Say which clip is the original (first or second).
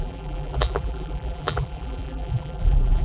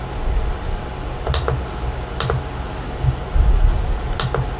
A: second